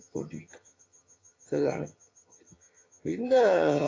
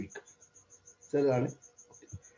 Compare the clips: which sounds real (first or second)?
second